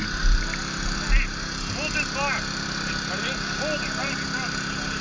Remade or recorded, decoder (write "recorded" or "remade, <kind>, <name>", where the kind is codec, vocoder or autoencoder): recorded